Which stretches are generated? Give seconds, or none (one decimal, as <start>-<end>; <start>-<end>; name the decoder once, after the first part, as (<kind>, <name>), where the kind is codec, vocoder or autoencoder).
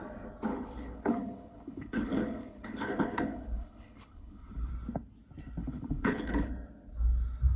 0.5-4.7 (codec, HILCodec); 5.6-6.5